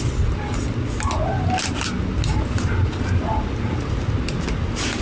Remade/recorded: recorded